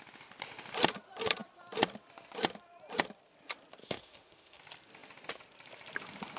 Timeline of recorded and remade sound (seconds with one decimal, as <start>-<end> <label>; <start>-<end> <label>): 0.0-3.8 recorded; 3.8-4.6 remade; 4.6-6.4 recorded